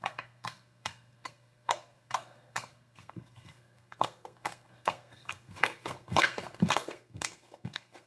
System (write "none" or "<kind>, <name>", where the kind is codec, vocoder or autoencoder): codec, SNAC